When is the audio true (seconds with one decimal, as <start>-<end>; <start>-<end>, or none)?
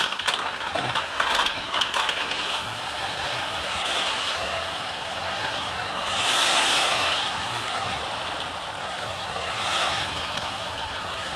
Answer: 8.0-8.8